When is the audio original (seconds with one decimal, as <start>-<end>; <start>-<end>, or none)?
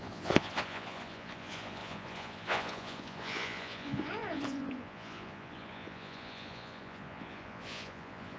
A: none